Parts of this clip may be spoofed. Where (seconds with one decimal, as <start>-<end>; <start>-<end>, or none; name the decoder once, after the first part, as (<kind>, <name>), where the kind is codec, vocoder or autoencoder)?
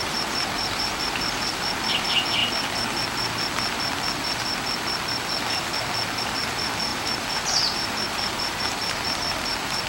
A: 0.0-2.4 (vocoder, BigVGAN v2); 6.2-9.9